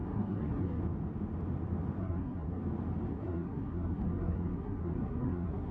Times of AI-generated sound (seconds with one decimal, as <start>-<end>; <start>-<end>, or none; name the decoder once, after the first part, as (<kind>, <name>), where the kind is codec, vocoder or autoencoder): 0.0-0.8 (codec, SNAC); 2.0-2.6; 3.1-5.7